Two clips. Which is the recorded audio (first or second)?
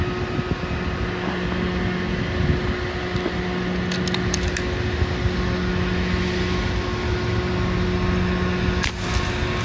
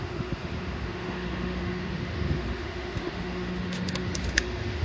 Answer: first